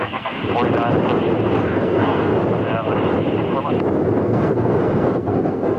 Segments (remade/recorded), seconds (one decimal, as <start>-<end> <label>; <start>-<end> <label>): 0.0-0.4 remade; 0.4-1.6 recorded; 1.6-2.3 remade; 2.3-4.2 recorded; 4.2-5.8 remade